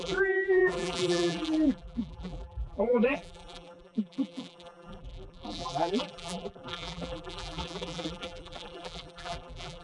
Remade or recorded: remade